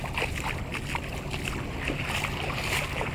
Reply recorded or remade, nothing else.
recorded